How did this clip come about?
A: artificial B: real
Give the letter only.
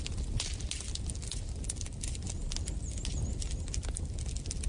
B